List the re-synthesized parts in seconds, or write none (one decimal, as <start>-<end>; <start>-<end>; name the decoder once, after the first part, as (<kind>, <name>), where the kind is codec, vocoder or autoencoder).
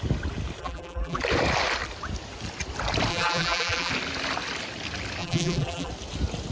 0.6-1.2 (vocoder, BigVGAN v2); 3.1-3.9; 5.2-5.9